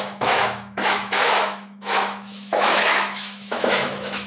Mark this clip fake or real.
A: fake